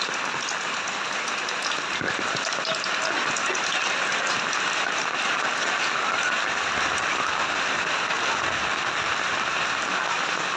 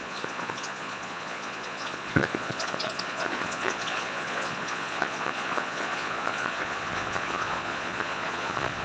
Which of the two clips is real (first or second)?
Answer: first